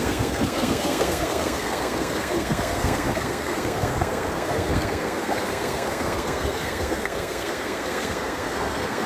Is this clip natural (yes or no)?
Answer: no